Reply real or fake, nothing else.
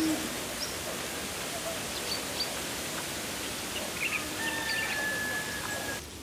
real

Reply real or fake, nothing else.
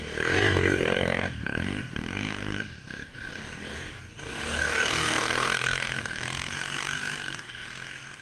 fake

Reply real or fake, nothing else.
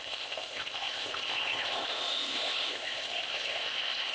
fake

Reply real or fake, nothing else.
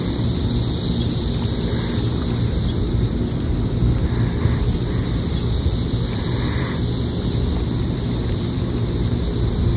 real